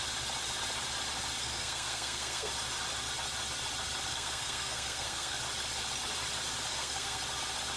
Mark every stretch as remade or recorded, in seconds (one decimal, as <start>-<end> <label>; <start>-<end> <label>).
0.0-1.4 recorded; 1.4-2.5 remade; 2.5-4.1 recorded; 4.1-5.4 remade; 5.4-6.7 recorded; 6.7-7.2 remade; 7.2-7.8 recorded